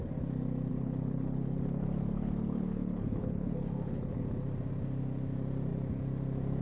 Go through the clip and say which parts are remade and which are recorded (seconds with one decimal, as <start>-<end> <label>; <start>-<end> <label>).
0.0-0.7 recorded; 0.7-4.2 remade; 4.2-6.6 recorded